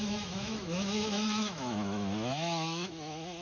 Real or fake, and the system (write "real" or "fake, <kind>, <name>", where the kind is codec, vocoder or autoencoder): fake, autoencoder, DAC-VAE